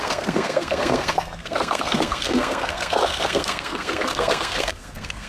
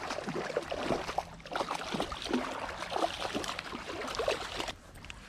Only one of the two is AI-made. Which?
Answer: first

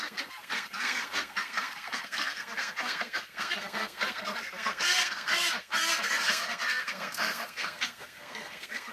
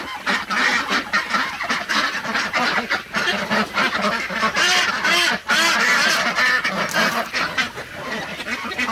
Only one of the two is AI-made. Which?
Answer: first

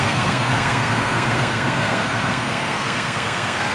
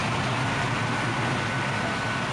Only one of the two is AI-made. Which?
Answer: first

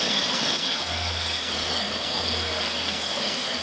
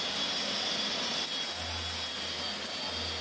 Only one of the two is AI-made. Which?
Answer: first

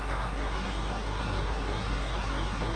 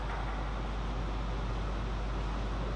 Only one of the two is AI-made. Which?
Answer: first